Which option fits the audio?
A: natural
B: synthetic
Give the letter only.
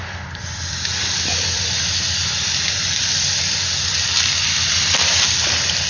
A